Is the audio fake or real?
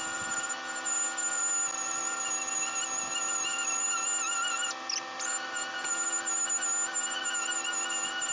real